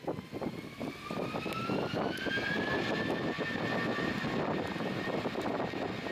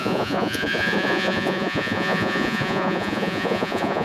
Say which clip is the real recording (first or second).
first